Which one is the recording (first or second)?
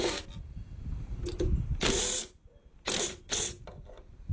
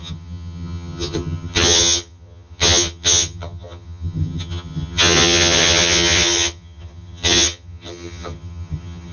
first